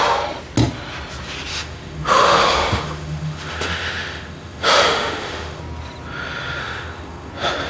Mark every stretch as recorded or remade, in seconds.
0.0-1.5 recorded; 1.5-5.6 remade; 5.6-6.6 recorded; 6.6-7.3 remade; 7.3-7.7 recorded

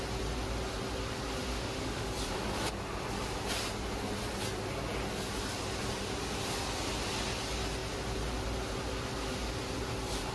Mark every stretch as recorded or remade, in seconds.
0.0-1.5 recorded; 1.5-2.1 remade; 2.1-10.3 recorded

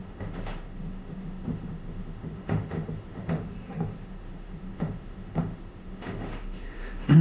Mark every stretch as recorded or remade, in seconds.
0.0-7.2 remade